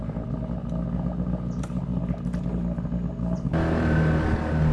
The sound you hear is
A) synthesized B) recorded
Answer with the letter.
B